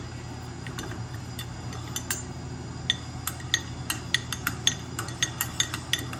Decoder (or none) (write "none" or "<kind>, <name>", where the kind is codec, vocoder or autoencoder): none